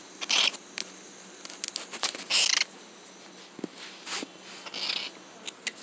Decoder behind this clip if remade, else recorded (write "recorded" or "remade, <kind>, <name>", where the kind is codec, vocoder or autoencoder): recorded